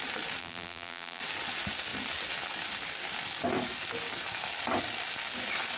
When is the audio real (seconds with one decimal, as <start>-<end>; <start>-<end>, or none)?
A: 0.0-0.4; 1.2-5.8